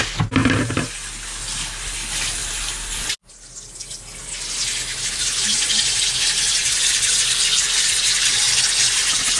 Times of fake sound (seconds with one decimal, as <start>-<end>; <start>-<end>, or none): 0.4-0.9; 4.9-8.6